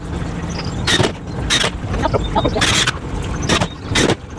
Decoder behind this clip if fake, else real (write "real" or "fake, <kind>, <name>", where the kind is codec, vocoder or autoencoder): real